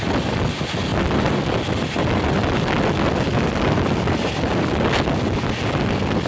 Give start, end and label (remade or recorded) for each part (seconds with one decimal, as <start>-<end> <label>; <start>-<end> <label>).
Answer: 0.0-6.3 recorded